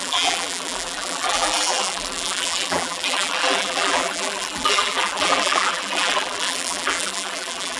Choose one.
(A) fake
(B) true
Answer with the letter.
A